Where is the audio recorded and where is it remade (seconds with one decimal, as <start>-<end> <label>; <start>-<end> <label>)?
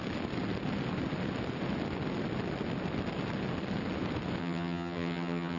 0.0-4.4 recorded; 4.4-5.6 remade